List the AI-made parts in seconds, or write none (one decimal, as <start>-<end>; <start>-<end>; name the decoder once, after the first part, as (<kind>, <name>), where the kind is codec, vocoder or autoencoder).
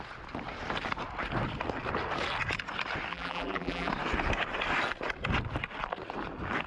3.1-3.9 (vocoder, BigVGAN v2)